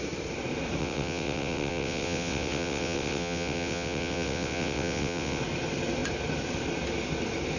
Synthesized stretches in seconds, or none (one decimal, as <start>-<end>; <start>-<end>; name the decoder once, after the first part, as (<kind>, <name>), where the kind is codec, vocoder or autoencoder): 0.8-5.4 (vocoder, WaveNeXt)